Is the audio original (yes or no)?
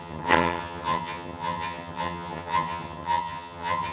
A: no